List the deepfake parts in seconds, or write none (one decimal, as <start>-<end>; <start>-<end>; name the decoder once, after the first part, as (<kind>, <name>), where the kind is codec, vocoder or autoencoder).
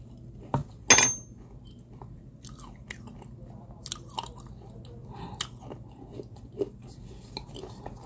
none